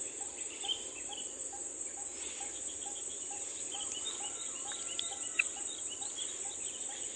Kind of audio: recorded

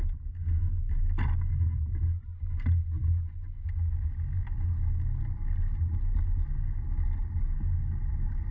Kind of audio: recorded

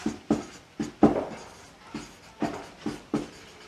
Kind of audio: recorded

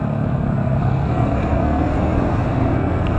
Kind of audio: remade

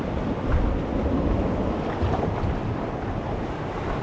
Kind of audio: recorded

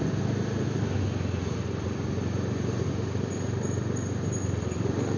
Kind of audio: recorded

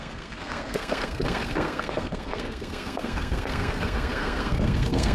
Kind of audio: remade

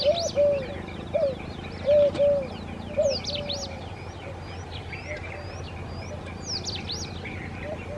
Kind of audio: recorded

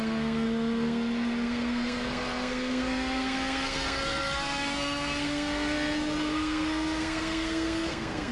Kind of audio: remade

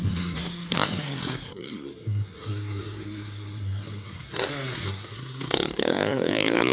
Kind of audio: remade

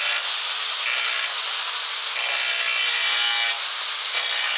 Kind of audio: recorded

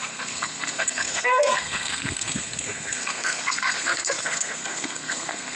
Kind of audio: remade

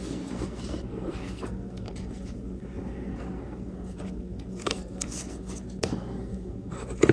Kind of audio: remade